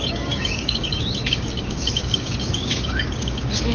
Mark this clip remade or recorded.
remade